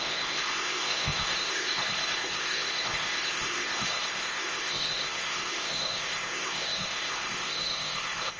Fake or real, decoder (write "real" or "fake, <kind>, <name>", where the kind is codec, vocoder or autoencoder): fake, codec, ZipCodec